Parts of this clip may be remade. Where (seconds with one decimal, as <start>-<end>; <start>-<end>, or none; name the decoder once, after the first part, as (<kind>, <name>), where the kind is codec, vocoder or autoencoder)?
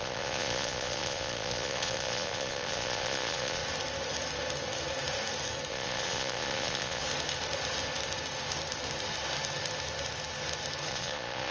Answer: 0.0-3.6 (vocoder, Vocos); 5.7-7.0; 10.9-11.5